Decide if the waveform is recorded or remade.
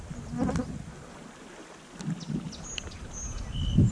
recorded